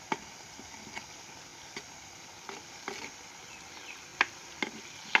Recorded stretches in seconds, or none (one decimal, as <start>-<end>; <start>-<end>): 0.0-4.1; 4.8-5.2